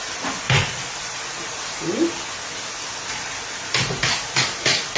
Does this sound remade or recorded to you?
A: recorded